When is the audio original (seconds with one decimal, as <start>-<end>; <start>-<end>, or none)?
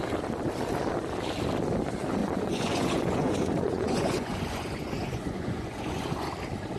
0.0-2.2; 6.3-6.8